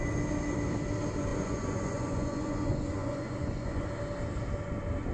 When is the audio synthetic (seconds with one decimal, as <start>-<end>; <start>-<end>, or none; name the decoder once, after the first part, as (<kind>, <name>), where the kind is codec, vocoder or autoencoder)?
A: 1.3-3.9 (vocoder, Vocos)